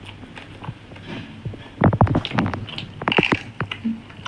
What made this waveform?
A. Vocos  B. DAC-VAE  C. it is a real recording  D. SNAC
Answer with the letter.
C